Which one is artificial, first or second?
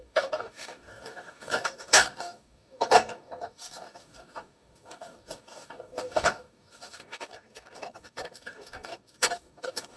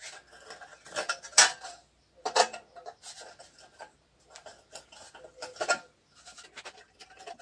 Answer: first